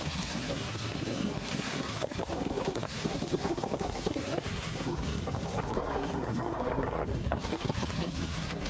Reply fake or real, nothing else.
fake